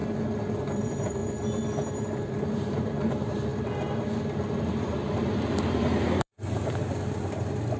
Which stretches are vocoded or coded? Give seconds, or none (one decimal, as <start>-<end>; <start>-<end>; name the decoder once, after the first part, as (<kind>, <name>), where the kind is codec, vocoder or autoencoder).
0.6-1.2 (vocoder, BigVGAN v2); 2.3-3.5; 4.7-7.8